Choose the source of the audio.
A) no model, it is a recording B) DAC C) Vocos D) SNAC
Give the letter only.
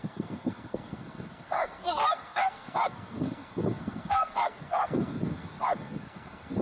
D